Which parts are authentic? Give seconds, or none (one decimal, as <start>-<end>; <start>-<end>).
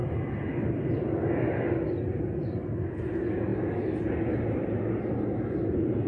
0.0-6.1